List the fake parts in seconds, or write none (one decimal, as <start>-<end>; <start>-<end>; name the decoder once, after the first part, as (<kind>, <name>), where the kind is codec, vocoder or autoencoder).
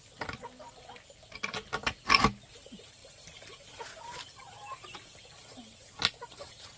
none